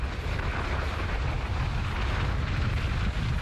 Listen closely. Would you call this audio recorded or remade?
recorded